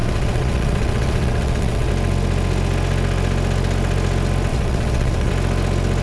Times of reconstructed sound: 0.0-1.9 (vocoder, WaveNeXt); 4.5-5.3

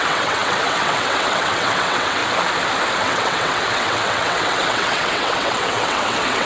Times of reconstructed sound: 0.0-2.2 (vocoder, WaveNeXt); 3.0-6.5

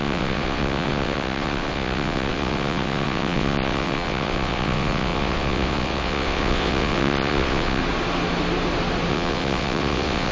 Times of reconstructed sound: 0.0-7.8 (vocoder, WaveNeXt); 9.1-10.3

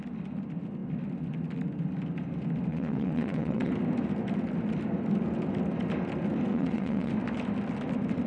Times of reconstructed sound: 2.7-3.7 (vocoder, WaveNeXt); 6.5-7.1

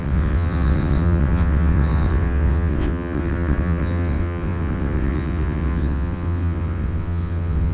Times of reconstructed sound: 0.0-7.7 (vocoder, WaveNeXt)

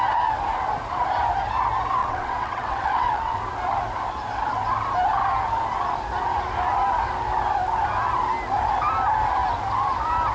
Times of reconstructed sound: 2.0-3.4 (vocoder, WaveNeXt)

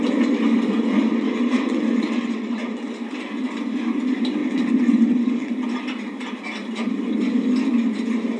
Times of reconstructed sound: 1.1-2.9 (vocoder, WaveNeXt); 4.4-5.5

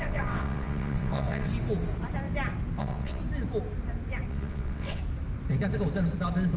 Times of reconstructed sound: 0.0-1.5 (vocoder, WaveNeXt); 2.8-3.2; 4.3-5.0